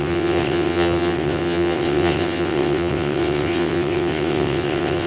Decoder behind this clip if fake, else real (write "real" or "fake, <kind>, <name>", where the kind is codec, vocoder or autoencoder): fake, vocoder, WaveNeXt